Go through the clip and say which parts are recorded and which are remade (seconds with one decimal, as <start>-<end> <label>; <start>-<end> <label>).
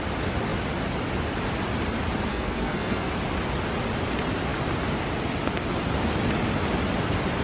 0.0-2.3 recorded; 2.3-3.1 remade; 3.1-7.4 recorded